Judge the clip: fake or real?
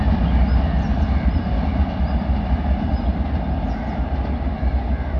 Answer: real